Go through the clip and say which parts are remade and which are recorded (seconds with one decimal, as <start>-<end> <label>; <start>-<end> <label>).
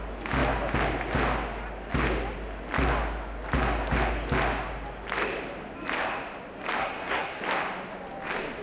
0.0-6.8 recorded; 6.8-7.4 remade; 7.4-8.6 recorded